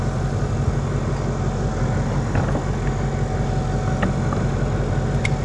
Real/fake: real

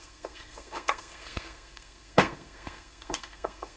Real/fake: fake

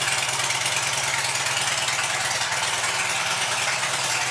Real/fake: real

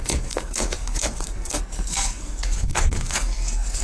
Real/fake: fake